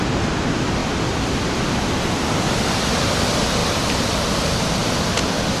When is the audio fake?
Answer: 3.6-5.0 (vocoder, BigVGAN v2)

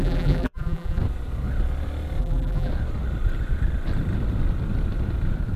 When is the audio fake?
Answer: 0.0-1.0 (vocoder, BigVGAN v2); 2.2-2.7

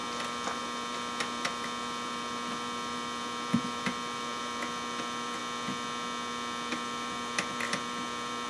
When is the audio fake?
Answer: 0.0-5.4 (vocoder, BigVGAN v2); 6.7-8.5

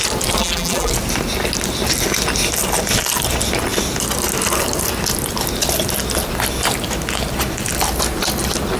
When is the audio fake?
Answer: 0.4-0.9 (vocoder, BigVGAN v2)

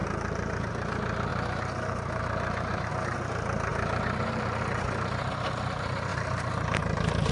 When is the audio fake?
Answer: 0.0-0.7 (vocoder, BigVGAN v2); 1.3-2.9; 3.7-4.6; 6.1-7.3